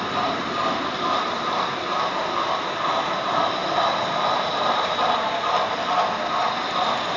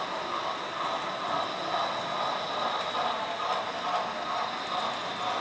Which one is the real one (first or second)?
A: second